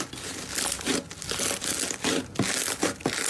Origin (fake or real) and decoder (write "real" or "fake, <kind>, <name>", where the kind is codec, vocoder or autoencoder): real